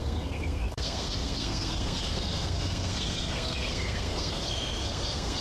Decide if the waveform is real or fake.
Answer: fake